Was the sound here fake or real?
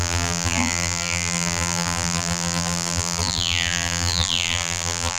fake